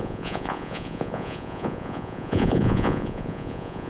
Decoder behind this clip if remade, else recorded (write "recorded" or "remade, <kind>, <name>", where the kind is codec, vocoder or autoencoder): remade, vocoder, Vocos